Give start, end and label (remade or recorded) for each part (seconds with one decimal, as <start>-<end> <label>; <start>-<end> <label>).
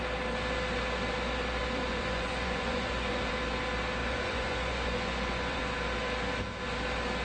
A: 0.0-1.8 recorded; 1.8-3.3 remade; 3.3-4.0 recorded; 4.0-5.6 remade; 5.6-7.2 recorded